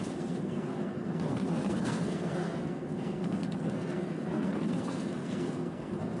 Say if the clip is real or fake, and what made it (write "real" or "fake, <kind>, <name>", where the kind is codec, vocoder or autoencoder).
fake, codec, SNAC